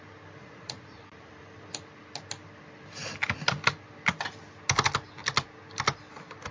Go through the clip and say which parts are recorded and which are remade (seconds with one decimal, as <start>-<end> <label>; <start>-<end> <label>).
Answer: 0.0-0.4 recorded; 0.4-1.0 remade; 1.0-6.5 recorded